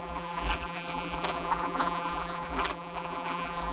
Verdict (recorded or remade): remade